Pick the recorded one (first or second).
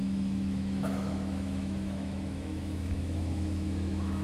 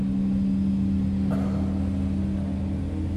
second